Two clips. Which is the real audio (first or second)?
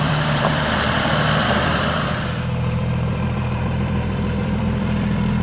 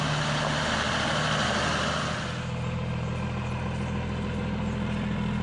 second